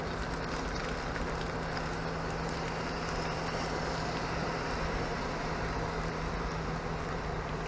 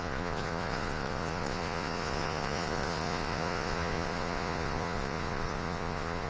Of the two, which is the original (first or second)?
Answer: first